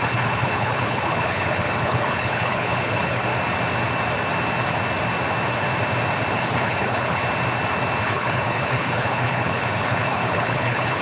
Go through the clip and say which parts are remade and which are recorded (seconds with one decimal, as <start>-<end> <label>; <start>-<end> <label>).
0.0-3.3 remade; 3.3-6.3 recorded; 6.3-7.2 remade; 7.2-8.0 recorded; 8.0-11.0 remade